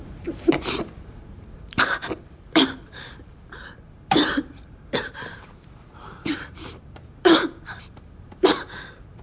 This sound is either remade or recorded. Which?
remade